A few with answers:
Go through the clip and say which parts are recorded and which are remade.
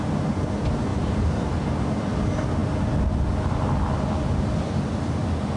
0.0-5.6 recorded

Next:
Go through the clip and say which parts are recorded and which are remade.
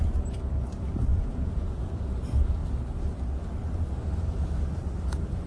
0.0-1.1 recorded; 1.1-1.9 remade; 1.9-5.5 recorded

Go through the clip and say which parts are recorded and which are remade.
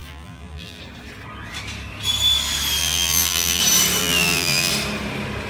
0.0-0.8 remade; 0.8-2.8 recorded; 2.8-3.6 remade; 3.6-4.0 recorded; 4.0-4.7 remade; 4.7-5.5 recorded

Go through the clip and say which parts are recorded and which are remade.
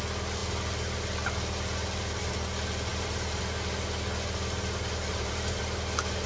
0.0-2.9 recorded; 2.9-3.4 remade; 3.4-5.1 recorded; 5.1-5.6 remade; 5.6-6.3 recorded